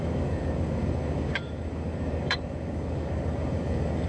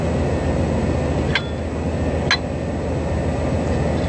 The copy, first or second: first